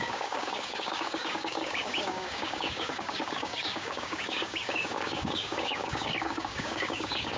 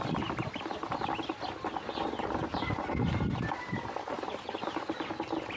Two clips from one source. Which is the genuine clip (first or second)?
second